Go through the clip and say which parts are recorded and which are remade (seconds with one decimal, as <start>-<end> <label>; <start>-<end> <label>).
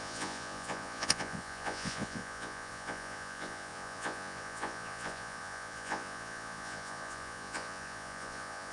0.0-8.7 remade